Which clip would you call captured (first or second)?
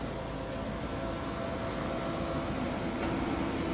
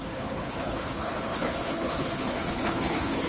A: first